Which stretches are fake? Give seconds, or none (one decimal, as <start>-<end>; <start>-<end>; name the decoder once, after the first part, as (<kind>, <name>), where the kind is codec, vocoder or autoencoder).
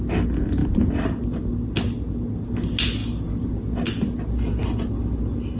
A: none